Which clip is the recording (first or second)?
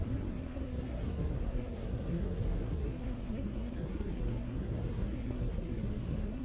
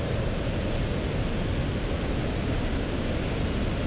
second